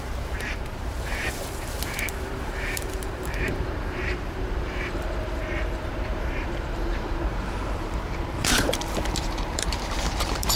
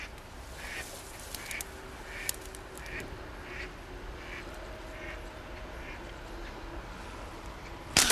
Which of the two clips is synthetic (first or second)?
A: first